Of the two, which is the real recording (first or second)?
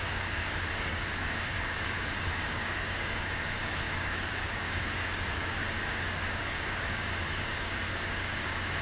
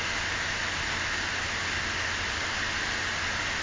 second